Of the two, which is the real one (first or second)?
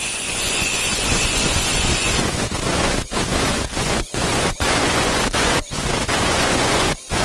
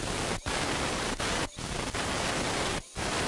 second